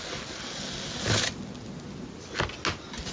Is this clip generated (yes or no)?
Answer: no